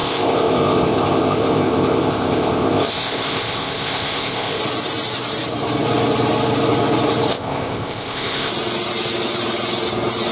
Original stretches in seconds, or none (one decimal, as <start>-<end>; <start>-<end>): 4.6-7.3; 8.5-10.3

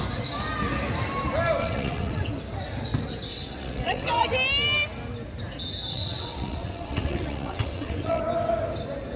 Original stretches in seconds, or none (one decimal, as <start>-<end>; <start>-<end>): 0.0-1.6; 2.3-3.3; 4.3-5.9; 8.2-9.2

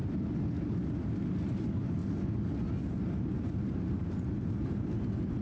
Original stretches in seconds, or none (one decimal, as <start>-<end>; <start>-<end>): 0.0-5.4

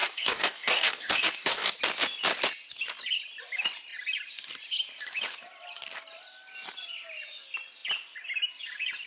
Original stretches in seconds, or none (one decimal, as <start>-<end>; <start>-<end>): 1.8-9.1

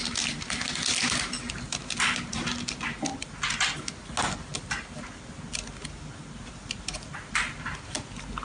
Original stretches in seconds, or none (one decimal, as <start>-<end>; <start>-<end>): 0.0-8.4

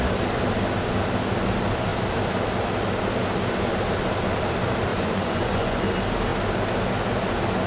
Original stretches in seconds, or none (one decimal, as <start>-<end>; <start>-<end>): 0.0-4.9; 5.8-7.7

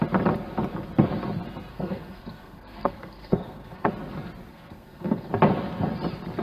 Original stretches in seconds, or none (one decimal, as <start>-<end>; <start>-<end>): 0.0-1.7; 3.9-4.5; 5.3-6.4